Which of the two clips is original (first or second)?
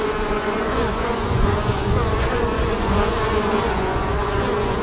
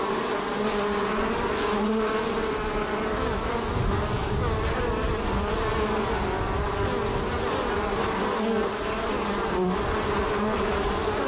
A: second